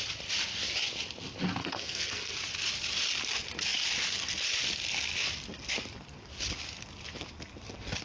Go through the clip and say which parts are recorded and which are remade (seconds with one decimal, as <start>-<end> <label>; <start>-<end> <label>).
0.0-1.6 recorded; 1.6-2.3 remade; 2.3-8.0 recorded